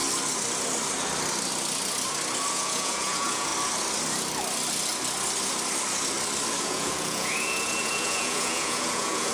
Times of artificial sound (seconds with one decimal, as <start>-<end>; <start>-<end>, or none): 2.5-3.5; 6.6-9.3